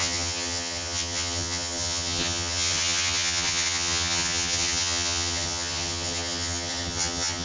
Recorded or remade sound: remade